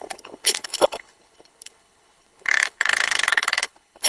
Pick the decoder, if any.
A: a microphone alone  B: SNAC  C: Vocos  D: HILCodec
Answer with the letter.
D